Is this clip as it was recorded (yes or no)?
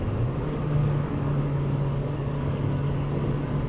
no